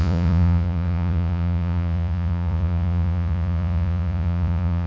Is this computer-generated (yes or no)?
yes